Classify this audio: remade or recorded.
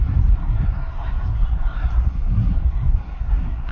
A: remade